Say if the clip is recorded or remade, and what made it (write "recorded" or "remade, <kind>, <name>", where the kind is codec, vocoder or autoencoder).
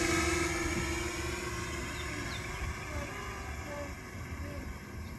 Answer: recorded